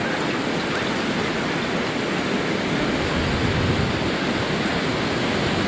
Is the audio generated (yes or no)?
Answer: no